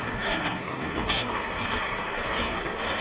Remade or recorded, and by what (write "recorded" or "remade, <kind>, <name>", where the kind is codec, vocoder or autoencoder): remade, codec, SNAC